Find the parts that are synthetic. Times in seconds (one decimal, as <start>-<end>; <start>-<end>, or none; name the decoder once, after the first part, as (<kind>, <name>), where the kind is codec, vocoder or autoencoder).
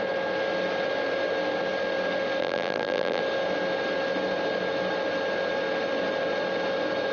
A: 2.4-3.2 (vocoder, BigVGAN v2)